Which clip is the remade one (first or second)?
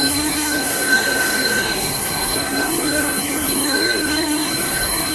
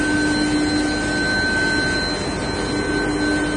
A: first